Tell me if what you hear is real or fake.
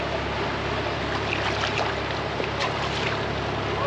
real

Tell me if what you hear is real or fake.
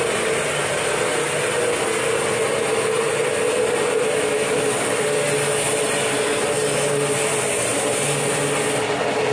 real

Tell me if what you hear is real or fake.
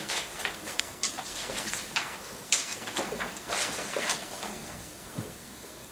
fake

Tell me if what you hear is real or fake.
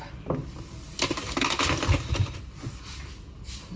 real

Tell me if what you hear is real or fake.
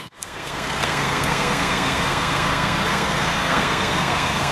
fake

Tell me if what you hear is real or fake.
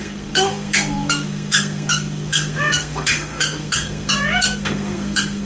fake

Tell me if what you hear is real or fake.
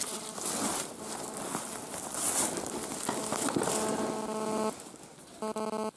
real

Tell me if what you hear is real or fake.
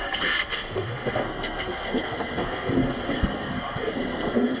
fake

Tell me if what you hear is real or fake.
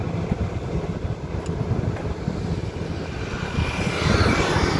real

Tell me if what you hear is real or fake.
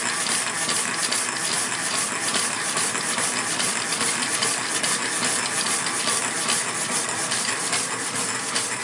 real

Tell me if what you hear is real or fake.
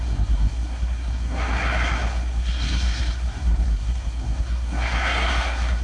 fake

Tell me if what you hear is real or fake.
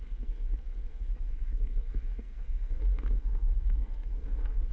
fake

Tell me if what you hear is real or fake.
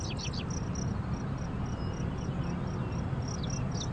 real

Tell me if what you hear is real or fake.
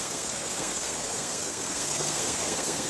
fake